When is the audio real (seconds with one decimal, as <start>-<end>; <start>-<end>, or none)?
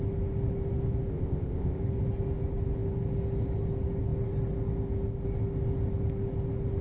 0.0-1.1; 1.8-6.8